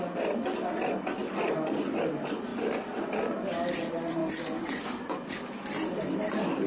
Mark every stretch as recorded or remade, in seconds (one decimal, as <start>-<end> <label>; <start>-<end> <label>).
0.0-6.7 recorded